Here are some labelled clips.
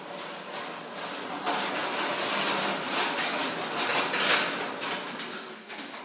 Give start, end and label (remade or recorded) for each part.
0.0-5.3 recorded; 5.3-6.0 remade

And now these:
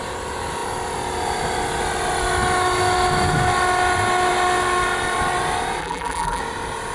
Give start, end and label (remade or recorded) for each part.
0.0-5.8 recorded; 5.8-6.4 remade; 6.4-6.9 recorded